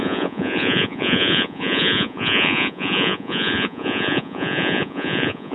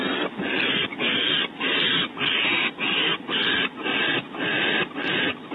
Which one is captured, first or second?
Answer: second